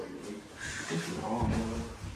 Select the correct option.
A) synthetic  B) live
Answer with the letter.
B